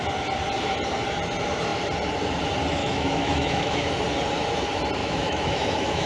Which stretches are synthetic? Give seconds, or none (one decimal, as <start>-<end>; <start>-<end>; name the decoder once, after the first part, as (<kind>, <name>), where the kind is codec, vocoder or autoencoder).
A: 2.8-3.9 (autoencoder, DAC-VAE); 5.0-6.1